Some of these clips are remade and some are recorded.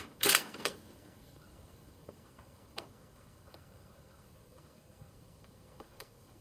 remade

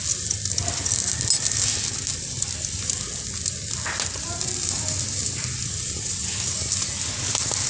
recorded